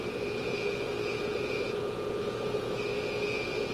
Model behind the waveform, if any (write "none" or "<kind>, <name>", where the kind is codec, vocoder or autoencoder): vocoder, Vocos